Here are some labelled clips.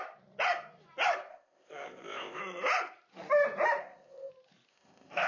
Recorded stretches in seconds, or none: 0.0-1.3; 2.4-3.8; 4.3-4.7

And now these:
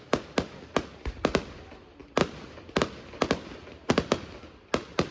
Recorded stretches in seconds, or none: 0.0-5.1

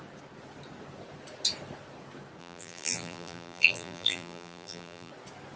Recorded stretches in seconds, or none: 0.0-2.4; 5.1-5.6

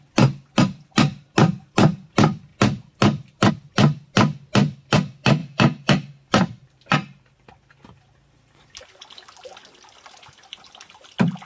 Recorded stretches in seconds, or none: 0.0-5.4; 7.7-11.5

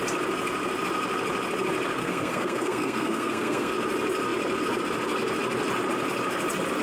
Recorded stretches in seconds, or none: 0.0-2.0; 3.7-6.8

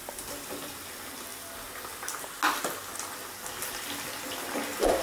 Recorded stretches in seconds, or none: 1.3-4.2